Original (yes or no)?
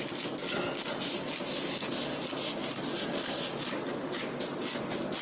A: yes